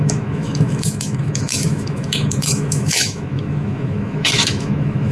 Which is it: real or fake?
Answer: fake